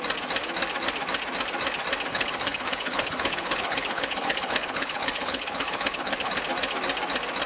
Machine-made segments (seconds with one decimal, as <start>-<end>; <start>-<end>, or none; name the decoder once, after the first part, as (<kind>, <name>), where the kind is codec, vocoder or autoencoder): 2.1-6.3 (codec, HILCodec)